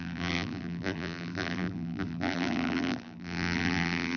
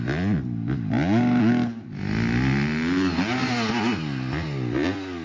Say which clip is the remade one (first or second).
first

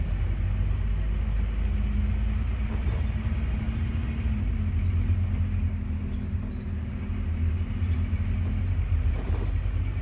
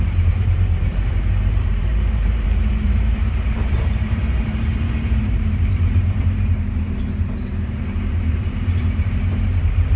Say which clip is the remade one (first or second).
second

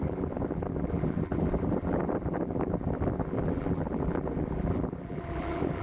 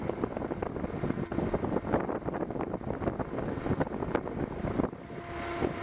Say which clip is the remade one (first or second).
first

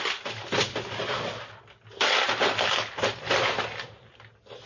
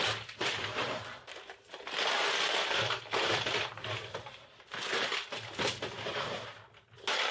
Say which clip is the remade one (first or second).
second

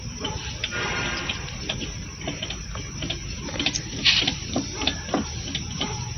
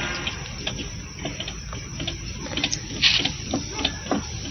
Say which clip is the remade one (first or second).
first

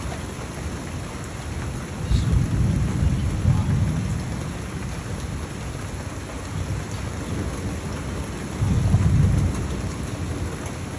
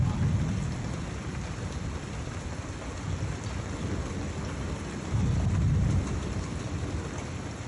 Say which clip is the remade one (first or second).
second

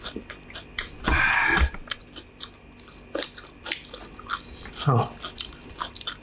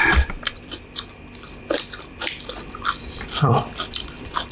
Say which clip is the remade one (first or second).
second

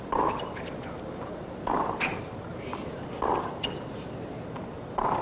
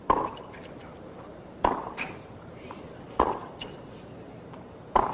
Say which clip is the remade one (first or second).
second